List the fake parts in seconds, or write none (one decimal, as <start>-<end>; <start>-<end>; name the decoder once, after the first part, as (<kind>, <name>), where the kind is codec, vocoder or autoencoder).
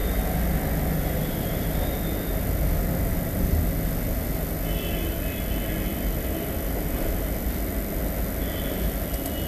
none